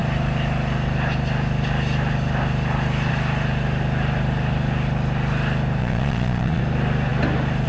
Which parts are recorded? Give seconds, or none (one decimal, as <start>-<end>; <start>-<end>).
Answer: 0.0-5.8; 6.6-7.7